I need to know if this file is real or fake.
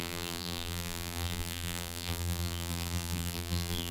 fake